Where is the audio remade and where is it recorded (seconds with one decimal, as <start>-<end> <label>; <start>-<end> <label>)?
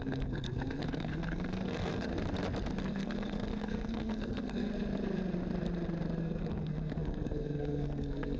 0.0-2.1 remade; 2.1-2.8 recorded; 2.8-4.7 remade; 4.7-6.2 recorded; 6.2-8.4 remade